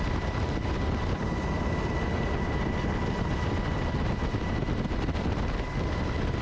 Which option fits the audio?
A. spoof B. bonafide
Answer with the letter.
B